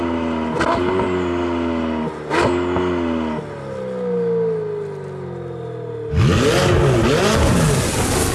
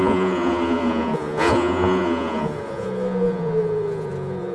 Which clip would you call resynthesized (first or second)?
second